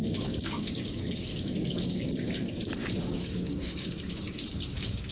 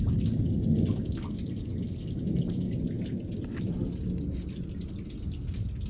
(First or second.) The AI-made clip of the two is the first